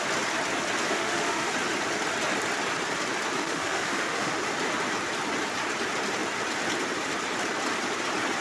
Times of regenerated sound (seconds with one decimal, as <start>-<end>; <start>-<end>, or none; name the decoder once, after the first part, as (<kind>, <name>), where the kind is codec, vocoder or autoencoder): 0.9-1.5 (autoencoder, DAC-VAE); 3.4-4.4